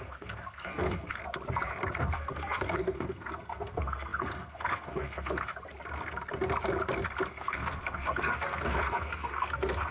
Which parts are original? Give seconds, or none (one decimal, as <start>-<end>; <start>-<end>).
1.2-2.0; 5.5-7.3

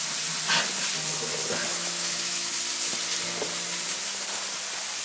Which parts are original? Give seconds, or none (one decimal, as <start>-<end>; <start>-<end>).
0.0-1.7; 2.5-5.0

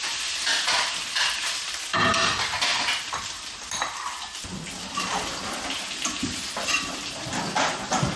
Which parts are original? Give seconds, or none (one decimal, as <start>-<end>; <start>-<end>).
0.0-8.2

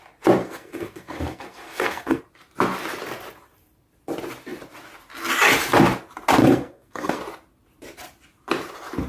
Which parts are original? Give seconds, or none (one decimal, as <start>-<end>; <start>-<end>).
0.0-0.4; 2.2-6.4; 7.2-9.1